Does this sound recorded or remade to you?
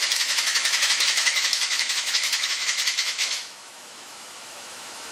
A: remade